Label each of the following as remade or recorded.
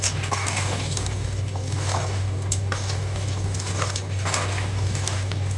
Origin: remade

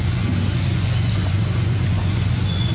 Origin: remade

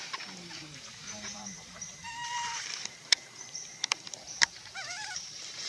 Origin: remade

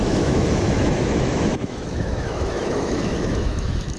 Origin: remade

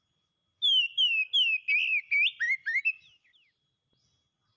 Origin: recorded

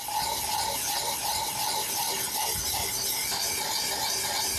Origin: recorded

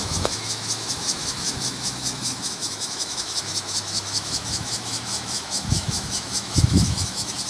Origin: remade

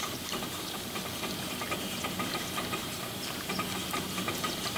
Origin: recorded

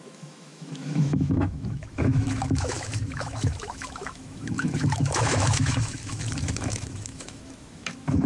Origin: remade